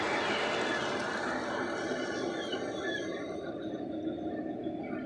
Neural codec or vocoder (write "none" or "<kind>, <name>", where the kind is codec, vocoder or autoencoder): none